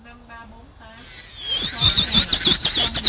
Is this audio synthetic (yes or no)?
no